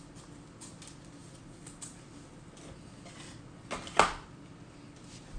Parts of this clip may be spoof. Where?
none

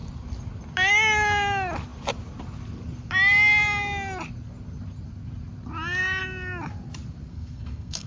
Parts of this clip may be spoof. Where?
7.3-8.1 (codec, SNAC)

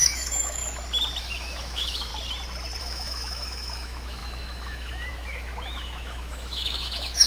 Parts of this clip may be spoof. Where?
0.0-0.6 (autoencoder, DAC-VAE); 1.2-2.1; 2.8-7.3

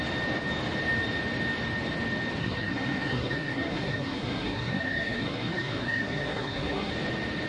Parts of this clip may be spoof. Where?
2.4-6.9 (codec, SNAC)